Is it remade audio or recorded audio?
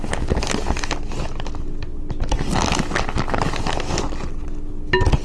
recorded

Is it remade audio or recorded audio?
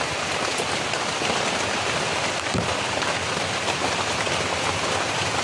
recorded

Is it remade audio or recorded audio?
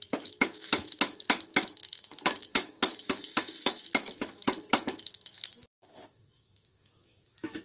remade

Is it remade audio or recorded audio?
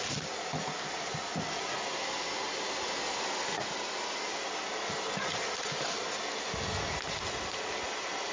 recorded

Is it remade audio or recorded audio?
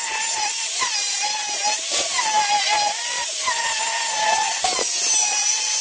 remade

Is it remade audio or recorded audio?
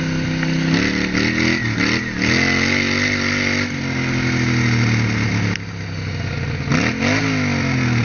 recorded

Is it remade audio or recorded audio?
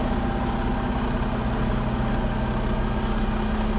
recorded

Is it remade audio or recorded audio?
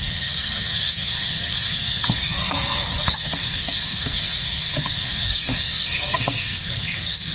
remade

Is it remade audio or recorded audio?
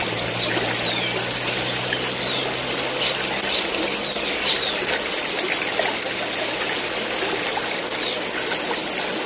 recorded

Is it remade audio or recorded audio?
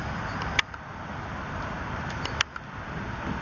recorded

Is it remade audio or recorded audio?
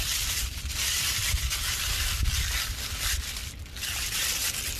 remade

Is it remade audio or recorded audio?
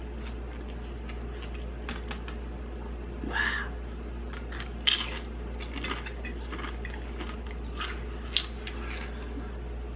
recorded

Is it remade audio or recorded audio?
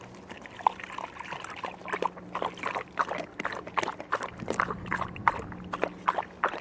remade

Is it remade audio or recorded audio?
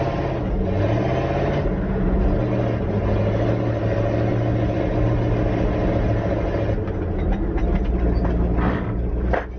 recorded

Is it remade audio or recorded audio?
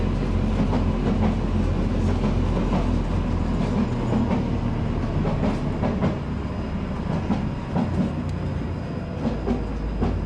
recorded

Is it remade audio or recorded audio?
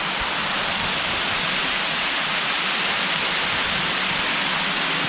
recorded